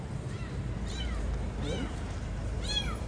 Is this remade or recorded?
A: remade